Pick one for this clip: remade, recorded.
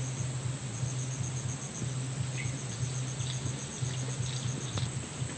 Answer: recorded